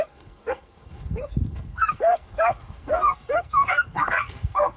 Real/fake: fake